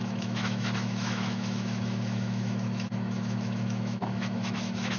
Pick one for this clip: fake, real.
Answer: fake